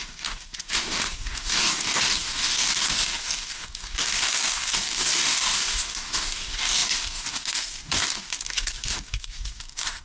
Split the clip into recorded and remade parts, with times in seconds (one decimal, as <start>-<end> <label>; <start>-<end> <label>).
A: 0.0-10.0 remade